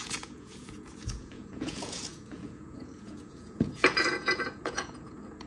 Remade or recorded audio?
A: remade